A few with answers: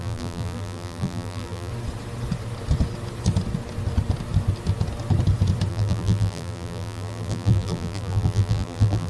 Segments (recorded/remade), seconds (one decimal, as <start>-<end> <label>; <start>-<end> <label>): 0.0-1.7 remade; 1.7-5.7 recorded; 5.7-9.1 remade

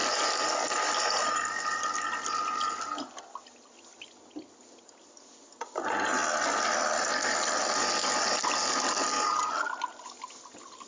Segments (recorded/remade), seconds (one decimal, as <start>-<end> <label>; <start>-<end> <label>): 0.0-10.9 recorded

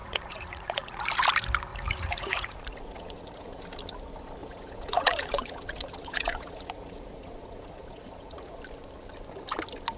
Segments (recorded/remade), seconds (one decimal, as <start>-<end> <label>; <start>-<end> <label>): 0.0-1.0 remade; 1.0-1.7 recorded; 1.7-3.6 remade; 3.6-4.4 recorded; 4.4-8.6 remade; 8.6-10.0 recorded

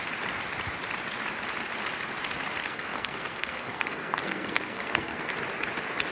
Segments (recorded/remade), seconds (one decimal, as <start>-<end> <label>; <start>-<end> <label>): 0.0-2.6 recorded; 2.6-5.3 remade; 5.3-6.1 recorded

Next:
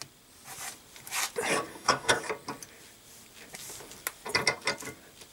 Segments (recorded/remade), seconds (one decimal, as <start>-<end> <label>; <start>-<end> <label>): 0.0-1.7 recorded; 1.7-2.2 remade; 2.2-5.3 recorded